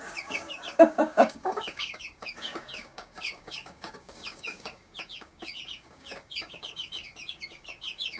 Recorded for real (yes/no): no